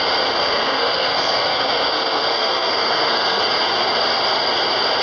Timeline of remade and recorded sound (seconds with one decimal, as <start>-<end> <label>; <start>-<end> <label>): 0.0-0.4 recorded; 0.4-3.4 remade; 3.4-5.0 recorded